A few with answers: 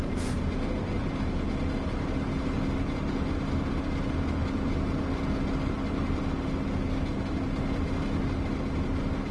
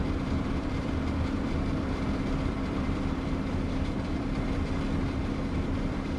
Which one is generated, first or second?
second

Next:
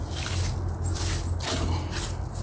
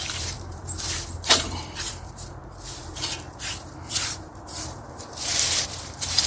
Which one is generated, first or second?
second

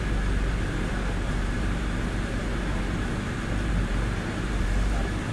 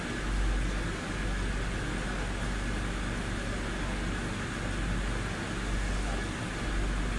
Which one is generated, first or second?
first